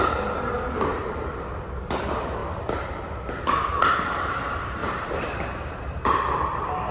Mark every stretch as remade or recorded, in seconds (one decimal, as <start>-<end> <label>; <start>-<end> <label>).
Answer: 0.0-0.9 recorded; 0.9-1.5 remade; 1.5-2.4 recorded; 2.4-3.3 remade; 3.3-6.9 recorded